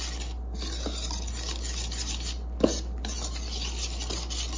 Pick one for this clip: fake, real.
real